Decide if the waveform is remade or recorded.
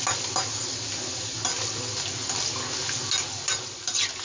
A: recorded